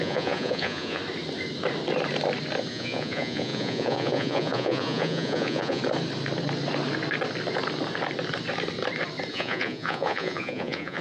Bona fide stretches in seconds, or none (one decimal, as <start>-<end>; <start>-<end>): 1.0-2.7; 5.8-9.3